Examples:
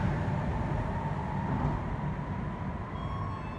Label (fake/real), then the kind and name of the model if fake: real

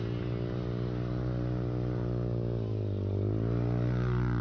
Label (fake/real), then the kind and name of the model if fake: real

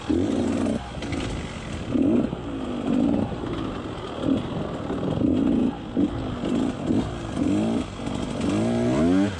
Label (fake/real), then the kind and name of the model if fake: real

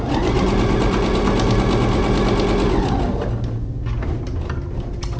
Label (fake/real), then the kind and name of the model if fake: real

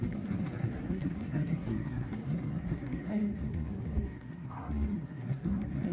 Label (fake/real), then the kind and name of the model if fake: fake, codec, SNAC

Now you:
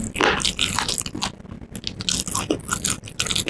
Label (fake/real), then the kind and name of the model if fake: real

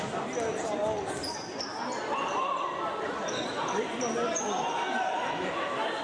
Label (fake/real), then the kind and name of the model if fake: real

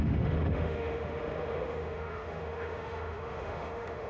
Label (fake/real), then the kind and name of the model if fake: fake, autoencoder, DAC-VAE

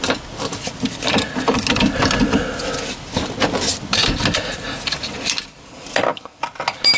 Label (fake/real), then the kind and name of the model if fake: real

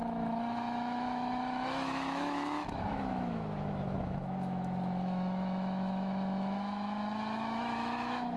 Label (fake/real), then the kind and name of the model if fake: fake, autoencoder, DAC-VAE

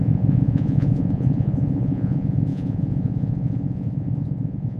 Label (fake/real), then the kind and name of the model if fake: fake, vocoder, Vocos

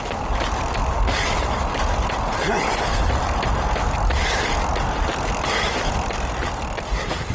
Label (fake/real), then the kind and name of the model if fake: real